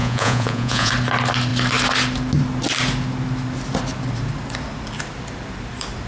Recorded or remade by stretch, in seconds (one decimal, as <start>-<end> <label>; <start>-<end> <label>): 0.0-0.9 remade; 0.9-6.1 recorded